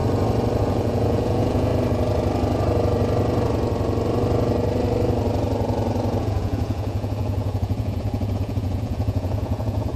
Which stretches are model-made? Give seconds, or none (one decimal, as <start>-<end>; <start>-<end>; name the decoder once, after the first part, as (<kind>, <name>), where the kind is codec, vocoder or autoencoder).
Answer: 0.6-1.7 (vocoder, Vocos); 6.2-10.0

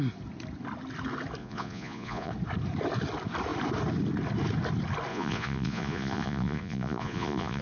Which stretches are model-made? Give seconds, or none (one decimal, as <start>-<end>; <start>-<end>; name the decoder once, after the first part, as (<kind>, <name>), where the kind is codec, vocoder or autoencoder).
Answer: 1.4-2.3 (vocoder, Vocos); 5.1-7.6

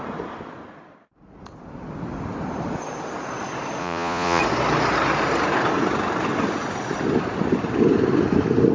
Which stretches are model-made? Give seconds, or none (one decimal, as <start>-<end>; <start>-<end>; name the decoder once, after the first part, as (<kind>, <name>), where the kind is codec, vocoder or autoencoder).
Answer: 3.8-4.4 (vocoder, Vocos)